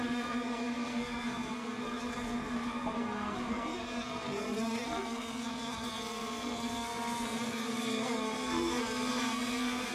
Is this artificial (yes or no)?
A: yes